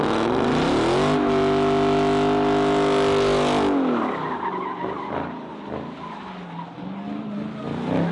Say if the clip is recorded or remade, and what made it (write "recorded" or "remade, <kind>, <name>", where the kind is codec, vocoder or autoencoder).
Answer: recorded